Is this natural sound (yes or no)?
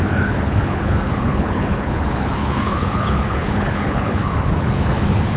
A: no